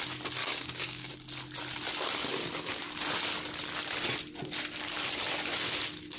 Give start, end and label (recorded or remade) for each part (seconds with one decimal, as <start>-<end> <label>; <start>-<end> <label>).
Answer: 0.0-0.4 recorded; 0.4-1.1 remade; 1.1-6.2 recorded